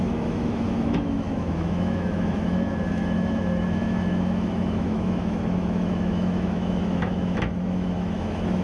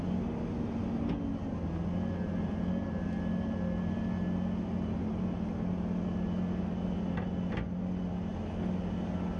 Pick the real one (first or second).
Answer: second